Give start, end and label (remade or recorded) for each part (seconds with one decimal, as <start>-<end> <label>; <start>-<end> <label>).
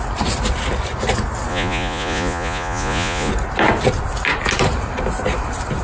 0.0-1.5 recorded; 1.5-3.3 remade; 3.3-5.8 recorded